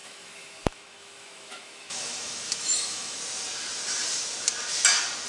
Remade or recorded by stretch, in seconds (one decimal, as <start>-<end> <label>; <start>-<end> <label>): 0.0-3.2 remade; 3.2-5.3 recorded